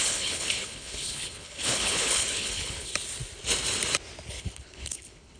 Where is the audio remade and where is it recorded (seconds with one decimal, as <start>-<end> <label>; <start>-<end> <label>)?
0.0-2.9 remade; 2.9-4.3 recorded; 4.3-5.4 remade